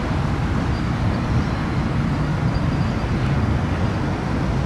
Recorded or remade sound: remade